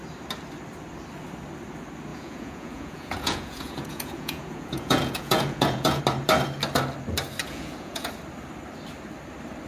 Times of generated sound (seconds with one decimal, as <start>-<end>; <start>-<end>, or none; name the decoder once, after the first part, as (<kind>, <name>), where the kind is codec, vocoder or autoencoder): 2.1-6.0 (vocoder, Vocos); 7.4-8.1